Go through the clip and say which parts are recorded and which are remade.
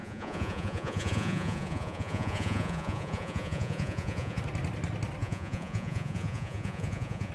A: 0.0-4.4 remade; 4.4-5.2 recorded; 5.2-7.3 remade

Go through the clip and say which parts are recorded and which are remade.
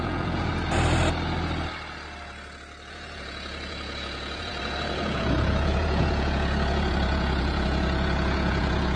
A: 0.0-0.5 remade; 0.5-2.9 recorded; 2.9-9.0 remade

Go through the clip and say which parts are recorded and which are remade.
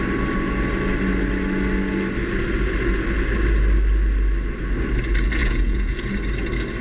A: 0.0-5.4 recorded; 5.4-6.0 remade; 6.0-6.8 recorded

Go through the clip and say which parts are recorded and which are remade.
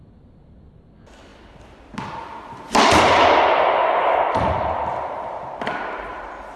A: 0.0-6.6 recorded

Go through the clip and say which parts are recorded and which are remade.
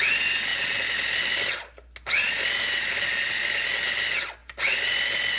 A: 0.0-5.4 recorded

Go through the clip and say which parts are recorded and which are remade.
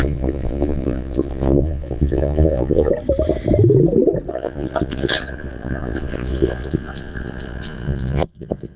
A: 0.0-2.9 remade; 2.9-4.3 recorded; 4.3-8.8 remade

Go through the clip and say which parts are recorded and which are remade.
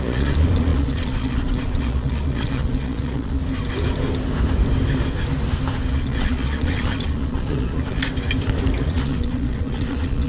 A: 0.0-3.4 remade; 3.4-5.9 recorded; 5.9-8.0 remade; 8.0-8.8 recorded; 8.8-10.3 remade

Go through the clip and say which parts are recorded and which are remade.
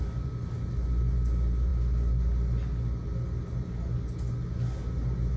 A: 0.0-5.4 recorded